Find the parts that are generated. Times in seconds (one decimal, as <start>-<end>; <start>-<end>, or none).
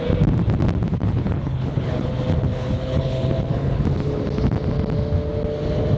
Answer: 1.0-2.1; 2.5-3.8